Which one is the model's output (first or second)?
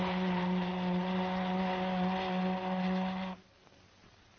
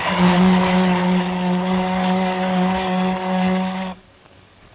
second